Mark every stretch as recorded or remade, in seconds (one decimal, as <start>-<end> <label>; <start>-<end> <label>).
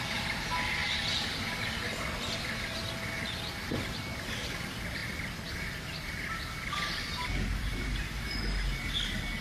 0.0-7.5 recorded; 7.5-8.1 remade; 8.1-9.4 recorded